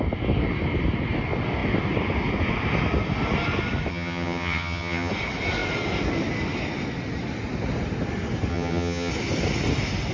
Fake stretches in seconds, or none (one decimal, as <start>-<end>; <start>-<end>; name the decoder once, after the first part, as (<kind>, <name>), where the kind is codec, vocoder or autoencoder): 3.9-5.1 (vocoder, HiFi-GAN); 8.5-9.1